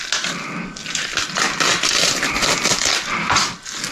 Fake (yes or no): no